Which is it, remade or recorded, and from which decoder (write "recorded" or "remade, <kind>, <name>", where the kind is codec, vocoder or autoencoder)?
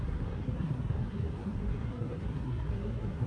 remade, codec, SNAC